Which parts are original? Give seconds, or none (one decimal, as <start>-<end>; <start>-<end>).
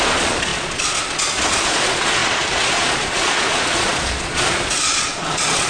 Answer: none